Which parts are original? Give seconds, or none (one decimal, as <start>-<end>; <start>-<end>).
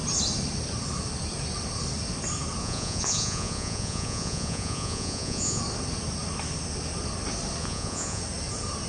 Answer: 0.0-2.6; 5.6-7.6; 8.2-8.9